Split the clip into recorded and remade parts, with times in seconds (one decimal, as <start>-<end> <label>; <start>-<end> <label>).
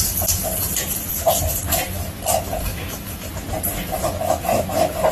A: 0.0-2.7 recorded; 2.7-3.3 remade; 3.3-5.1 recorded